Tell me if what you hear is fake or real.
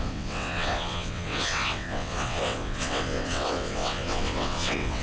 fake